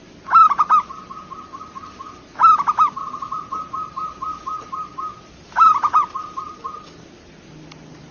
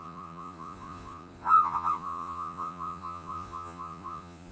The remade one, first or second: second